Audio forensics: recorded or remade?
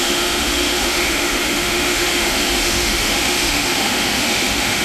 remade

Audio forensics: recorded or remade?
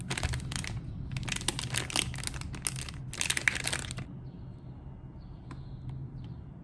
recorded